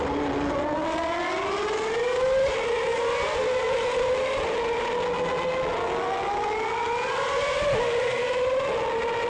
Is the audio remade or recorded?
recorded